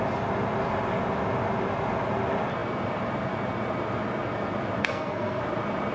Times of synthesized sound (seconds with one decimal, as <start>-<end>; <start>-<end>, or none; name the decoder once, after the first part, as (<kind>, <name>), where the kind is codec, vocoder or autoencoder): 4.8-5.4 (codec, SNAC)